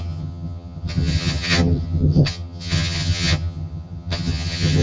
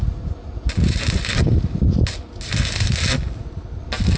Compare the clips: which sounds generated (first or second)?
first